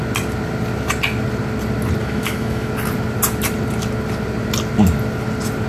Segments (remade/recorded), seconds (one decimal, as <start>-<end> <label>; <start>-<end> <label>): 0.0-2.0 recorded; 2.0-2.7 remade; 2.7-5.7 recorded